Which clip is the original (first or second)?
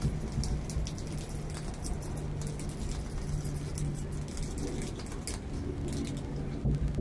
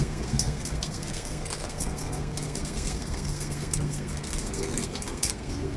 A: first